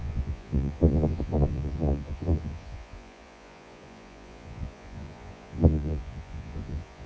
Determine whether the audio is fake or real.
fake